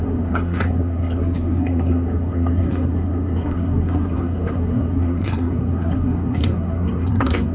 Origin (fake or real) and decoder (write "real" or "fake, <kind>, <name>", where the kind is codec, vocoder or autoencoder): fake, codec, SNAC